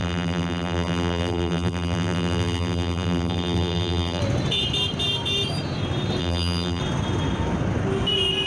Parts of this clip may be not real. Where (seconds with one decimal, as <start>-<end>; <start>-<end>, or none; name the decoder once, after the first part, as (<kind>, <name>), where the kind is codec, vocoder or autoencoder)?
0.0-4.2 (vocoder, BigVGAN v2); 6.2-6.8